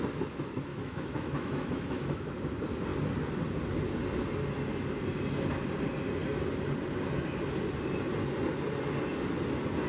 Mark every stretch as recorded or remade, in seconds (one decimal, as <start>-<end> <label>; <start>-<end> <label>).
0.0-0.7 recorded; 0.7-2.4 remade; 2.4-9.9 recorded

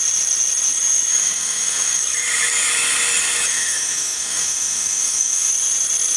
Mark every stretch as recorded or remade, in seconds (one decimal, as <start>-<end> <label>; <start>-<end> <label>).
0.0-1.1 recorded; 1.1-2.0 remade; 2.0-3.5 recorded; 3.5-5.5 remade; 5.5-6.2 recorded